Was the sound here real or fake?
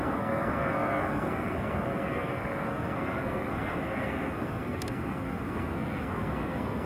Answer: fake